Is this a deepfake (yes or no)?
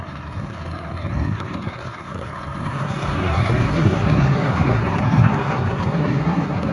yes